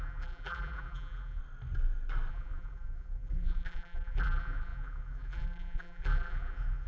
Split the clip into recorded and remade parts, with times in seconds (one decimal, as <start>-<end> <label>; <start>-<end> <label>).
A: 0.0-1.4 remade; 1.4-2.3 recorded; 2.3-6.9 remade